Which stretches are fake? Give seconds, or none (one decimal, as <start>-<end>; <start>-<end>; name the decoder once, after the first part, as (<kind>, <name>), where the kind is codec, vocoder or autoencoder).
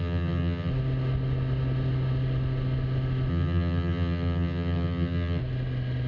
0.0-0.7 (vocoder, HiFi-GAN); 3.3-5.4